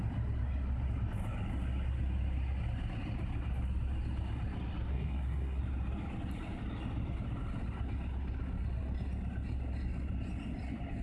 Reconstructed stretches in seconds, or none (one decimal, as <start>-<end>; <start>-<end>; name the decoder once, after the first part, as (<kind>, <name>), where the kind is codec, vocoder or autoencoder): 4.9-5.6 (codec, SNAC)